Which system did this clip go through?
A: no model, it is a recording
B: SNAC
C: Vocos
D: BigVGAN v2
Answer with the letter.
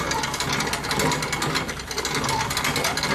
A